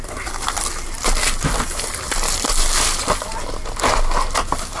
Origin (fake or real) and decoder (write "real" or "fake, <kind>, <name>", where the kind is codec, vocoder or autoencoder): real